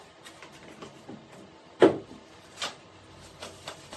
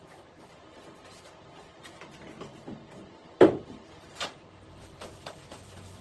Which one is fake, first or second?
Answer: second